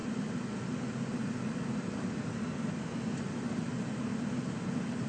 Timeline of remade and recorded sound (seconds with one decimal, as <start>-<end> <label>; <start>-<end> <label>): 0.0-5.1 recorded